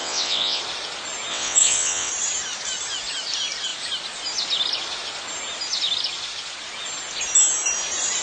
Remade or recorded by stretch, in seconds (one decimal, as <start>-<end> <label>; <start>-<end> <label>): 0.0-0.6 remade; 0.6-1.3 recorded; 1.3-2.1 remade; 2.1-8.2 recorded